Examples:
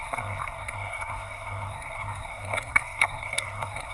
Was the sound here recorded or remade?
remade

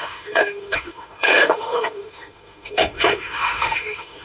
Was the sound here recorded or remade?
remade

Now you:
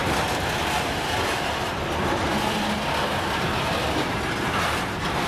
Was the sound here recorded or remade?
recorded